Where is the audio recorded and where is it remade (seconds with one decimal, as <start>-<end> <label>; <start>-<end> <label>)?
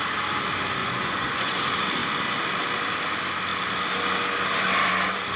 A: 0.0-0.8 recorded; 0.8-1.6 remade; 1.6-5.4 recorded